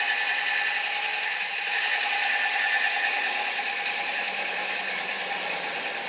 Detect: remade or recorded remade